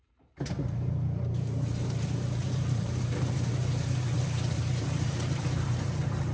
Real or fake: fake